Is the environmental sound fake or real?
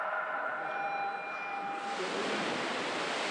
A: real